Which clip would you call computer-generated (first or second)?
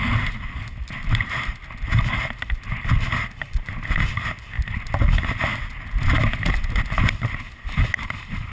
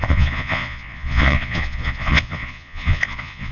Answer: second